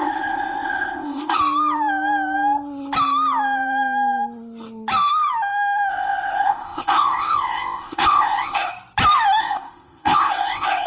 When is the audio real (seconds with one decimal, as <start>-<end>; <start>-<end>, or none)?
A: 1.4-5.9; 8.7-9.4